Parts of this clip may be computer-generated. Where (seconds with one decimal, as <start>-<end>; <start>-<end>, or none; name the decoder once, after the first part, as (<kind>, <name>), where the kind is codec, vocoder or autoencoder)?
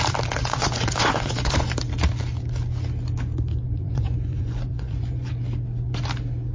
0.4-1.7 (vocoder, Vocos); 3.5-5.3